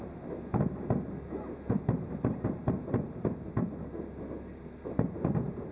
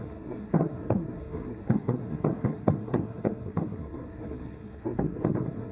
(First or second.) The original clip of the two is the first